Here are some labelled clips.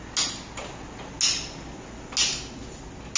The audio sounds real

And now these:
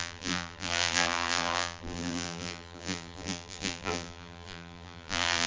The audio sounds fake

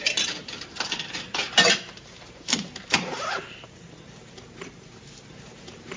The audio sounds fake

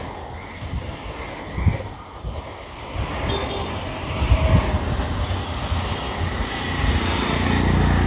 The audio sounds real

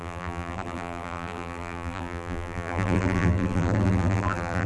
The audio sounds fake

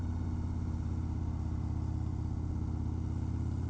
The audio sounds real